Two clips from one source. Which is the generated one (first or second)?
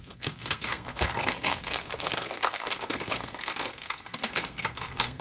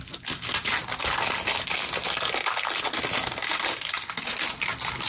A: first